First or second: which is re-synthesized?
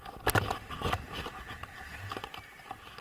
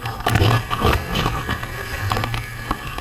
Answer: second